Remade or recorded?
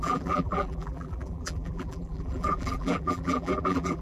remade